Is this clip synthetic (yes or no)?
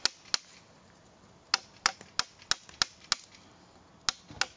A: no